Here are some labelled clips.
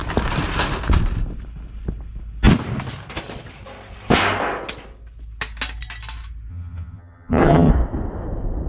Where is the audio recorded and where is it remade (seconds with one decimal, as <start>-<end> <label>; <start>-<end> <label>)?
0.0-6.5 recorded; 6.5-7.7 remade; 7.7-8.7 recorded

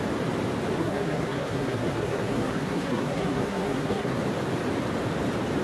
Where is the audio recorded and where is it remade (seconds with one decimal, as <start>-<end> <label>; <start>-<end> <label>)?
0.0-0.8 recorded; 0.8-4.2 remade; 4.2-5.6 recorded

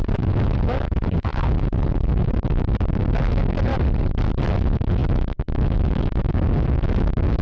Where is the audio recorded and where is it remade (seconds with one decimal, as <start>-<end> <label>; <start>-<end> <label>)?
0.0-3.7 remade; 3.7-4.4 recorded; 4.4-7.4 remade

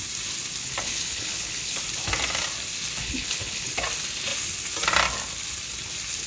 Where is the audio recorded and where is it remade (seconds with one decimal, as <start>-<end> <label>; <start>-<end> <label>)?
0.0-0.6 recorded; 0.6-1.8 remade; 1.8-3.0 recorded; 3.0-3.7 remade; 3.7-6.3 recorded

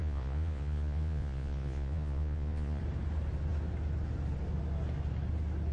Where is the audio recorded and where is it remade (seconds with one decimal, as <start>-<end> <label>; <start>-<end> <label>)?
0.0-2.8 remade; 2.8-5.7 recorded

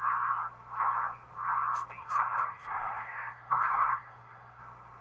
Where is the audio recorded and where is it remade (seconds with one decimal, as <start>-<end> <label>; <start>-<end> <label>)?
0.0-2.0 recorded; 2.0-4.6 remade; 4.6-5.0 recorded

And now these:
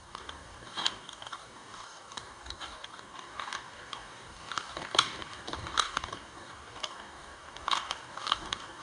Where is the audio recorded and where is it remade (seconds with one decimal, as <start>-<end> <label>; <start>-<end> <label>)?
0.0-8.8 remade

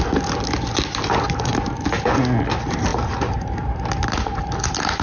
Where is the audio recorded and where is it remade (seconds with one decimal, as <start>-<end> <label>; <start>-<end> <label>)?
0.0-2.9 recorded; 2.9-4.6 remade; 4.6-5.0 recorded